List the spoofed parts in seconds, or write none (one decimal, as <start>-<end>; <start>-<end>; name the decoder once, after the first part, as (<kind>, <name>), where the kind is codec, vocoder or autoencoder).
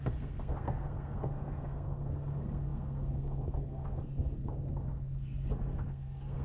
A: 0.0-6.4 (codec, SNAC)